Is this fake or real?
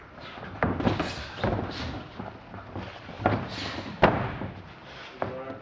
real